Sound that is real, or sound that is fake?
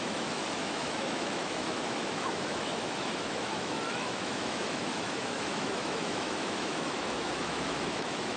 fake